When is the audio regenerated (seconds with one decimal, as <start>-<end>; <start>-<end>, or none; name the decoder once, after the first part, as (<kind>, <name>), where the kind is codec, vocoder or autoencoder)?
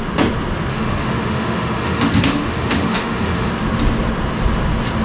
0.7-3.5 (autoencoder, DAC-VAE)